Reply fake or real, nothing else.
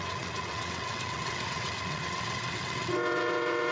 fake